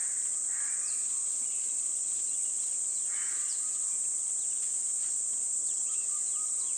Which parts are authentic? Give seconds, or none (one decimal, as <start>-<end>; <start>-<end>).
0.0-5.5; 6.1-6.8

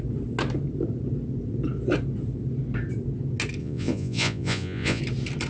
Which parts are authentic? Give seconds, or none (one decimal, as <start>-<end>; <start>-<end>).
0.0-3.6; 5.0-5.5

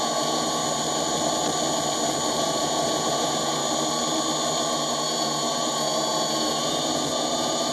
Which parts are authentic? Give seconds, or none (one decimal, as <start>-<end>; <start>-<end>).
0.6-2.3; 3.6-4.7

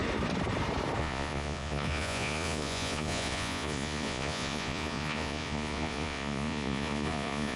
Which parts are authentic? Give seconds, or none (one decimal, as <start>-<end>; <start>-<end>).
0.0-1.0